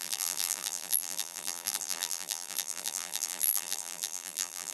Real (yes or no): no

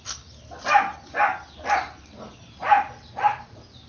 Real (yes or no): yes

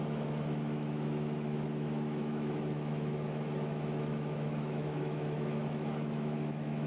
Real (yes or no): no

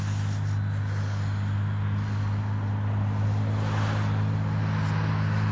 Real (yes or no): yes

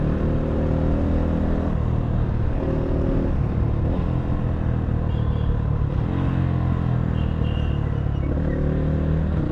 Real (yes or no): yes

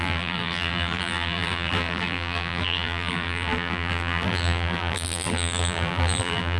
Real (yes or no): no